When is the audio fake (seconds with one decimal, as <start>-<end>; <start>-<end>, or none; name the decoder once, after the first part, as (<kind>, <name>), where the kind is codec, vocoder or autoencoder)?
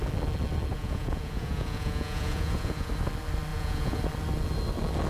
0.7-2.9 (vocoder, Vocos); 3.5-4.0